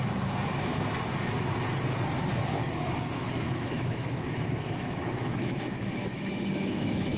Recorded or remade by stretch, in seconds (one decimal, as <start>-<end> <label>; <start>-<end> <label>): 0.0-2.6 recorded; 2.6-7.2 remade